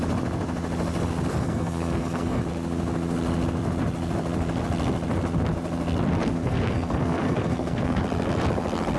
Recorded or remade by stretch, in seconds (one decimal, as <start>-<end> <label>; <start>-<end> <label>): 0.0-1.3 recorded; 1.3-2.4 remade; 2.4-6.2 recorded; 6.2-8.0 remade; 8.0-9.0 recorded